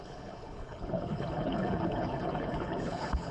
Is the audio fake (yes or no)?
yes